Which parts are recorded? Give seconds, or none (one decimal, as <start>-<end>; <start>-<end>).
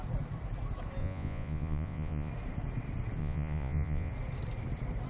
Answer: 0.0-1.0; 2.3-3.2; 4.1-5.1